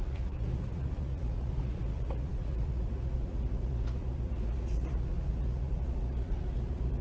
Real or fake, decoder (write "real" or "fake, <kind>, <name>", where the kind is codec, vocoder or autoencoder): fake, vocoder, Vocos